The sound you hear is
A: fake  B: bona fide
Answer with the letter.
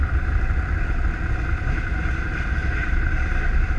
B